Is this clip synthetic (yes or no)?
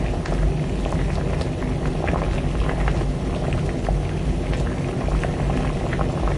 no